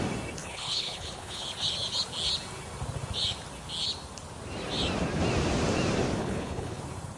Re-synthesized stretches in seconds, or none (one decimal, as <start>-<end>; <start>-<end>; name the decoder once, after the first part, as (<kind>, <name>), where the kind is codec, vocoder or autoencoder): 0.4-1.4 (codec, HILCodec); 6.2-6.8